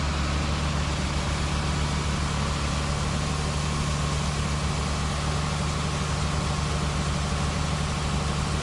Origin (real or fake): real